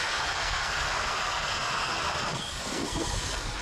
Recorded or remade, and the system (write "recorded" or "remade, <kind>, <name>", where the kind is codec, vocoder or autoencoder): remade, codec, SNAC